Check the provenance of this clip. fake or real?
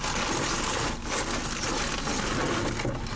real